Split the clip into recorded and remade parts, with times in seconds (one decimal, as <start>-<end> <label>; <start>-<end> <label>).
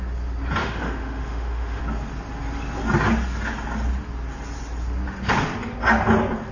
0.0-0.6 recorded; 0.6-1.8 remade; 1.8-6.5 recorded